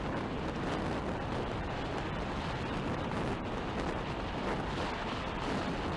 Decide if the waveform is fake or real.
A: real